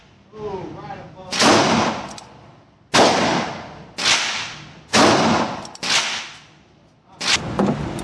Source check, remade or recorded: recorded